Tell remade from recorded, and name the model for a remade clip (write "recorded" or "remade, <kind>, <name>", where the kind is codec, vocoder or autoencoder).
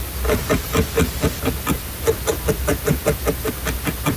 recorded